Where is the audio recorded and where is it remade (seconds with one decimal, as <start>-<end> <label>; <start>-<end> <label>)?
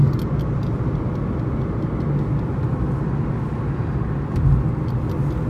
0.0-5.5 recorded